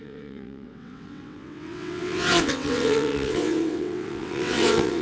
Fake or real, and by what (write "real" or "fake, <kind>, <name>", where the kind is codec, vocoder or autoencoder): fake, vocoder, WaveNeXt